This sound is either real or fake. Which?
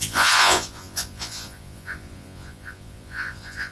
fake